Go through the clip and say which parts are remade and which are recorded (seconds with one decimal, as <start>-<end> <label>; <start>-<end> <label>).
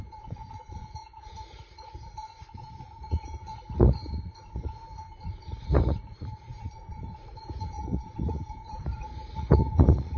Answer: 0.0-10.2 remade